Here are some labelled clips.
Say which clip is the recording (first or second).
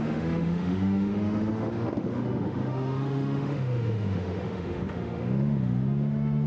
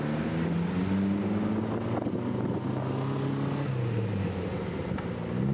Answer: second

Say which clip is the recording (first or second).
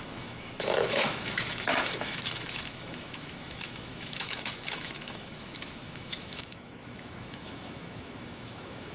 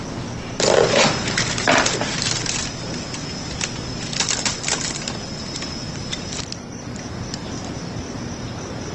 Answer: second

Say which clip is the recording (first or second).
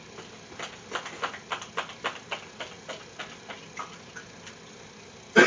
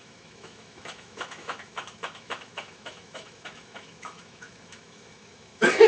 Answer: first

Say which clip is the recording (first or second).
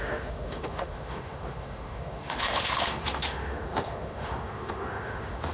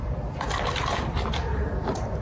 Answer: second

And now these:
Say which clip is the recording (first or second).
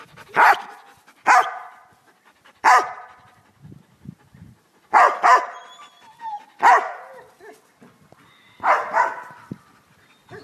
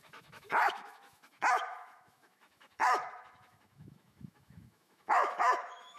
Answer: first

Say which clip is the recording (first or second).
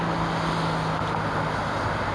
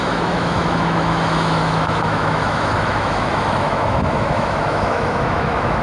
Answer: first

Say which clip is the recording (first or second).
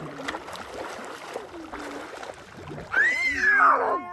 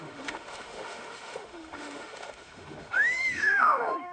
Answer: first